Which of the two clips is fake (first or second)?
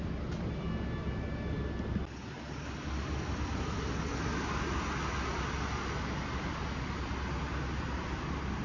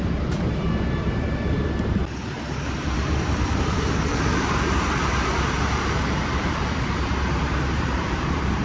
second